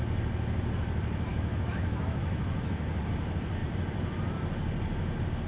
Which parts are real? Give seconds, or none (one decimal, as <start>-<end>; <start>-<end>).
0.0-1.3; 2.4-5.5